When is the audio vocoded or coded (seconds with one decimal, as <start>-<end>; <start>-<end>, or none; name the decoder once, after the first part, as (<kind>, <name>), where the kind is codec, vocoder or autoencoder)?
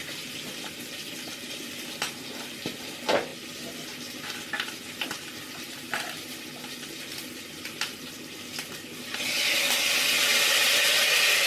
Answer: none